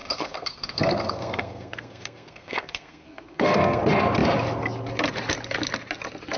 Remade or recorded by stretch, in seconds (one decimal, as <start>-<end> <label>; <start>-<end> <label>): 0.0-3.8 remade; 3.8-6.4 recorded